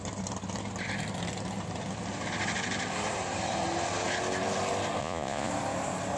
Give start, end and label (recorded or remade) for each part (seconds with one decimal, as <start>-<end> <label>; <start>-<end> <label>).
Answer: 0.0-5.0 recorded; 5.0-5.5 remade; 5.5-6.2 recorded